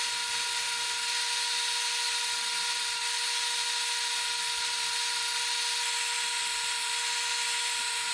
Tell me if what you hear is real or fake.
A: real